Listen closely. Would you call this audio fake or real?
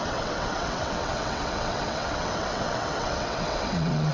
fake